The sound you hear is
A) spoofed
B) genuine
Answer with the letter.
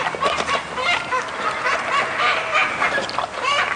B